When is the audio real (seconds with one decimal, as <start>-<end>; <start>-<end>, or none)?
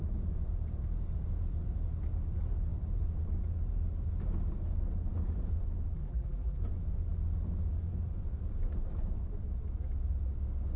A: 0.0-6.0; 6.6-10.8